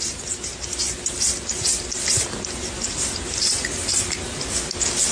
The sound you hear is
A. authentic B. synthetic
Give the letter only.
A